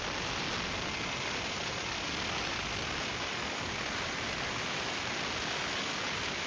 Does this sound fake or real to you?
real